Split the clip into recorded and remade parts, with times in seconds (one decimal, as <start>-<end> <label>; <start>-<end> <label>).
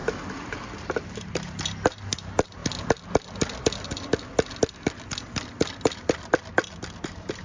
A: 0.0-1.0 recorded; 1.0-2.6 remade; 2.6-7.0 recorded; 7.0-7.4 remade